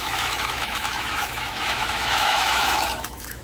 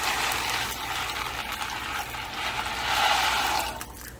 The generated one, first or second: first